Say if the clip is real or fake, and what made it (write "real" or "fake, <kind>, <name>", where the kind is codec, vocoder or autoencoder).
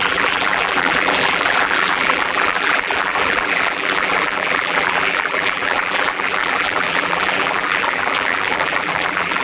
fake, vocoder, BigVGAN v2